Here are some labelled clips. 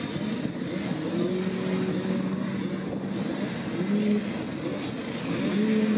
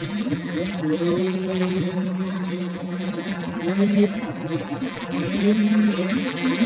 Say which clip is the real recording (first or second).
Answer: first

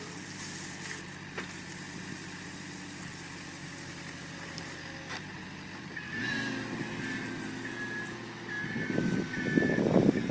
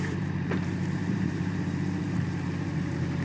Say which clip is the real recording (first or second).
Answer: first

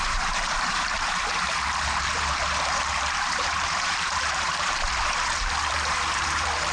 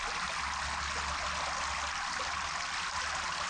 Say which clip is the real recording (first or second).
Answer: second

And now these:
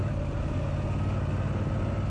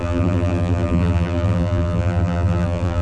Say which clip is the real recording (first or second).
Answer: first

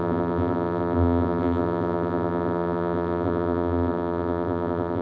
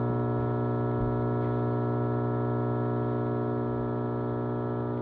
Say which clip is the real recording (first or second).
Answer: second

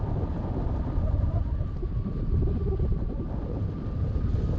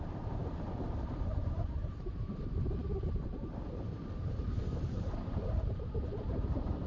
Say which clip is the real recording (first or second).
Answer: first